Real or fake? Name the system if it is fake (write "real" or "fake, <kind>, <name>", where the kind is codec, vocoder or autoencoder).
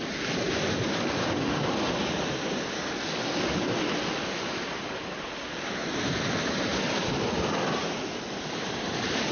real